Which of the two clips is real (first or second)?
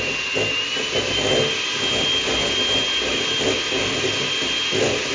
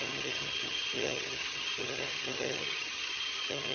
first